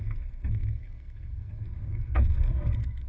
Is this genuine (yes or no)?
no